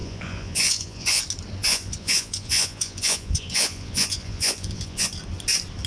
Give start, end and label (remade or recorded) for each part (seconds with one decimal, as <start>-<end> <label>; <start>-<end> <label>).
0.0-1.2 remade; 1.2-1.6 recorded; 1.6-5.1 remade; 5.1-5.9 recorded